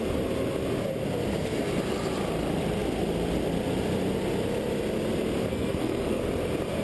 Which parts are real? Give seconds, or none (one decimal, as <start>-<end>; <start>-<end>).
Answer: 0.0-5.5; 6.2-6.8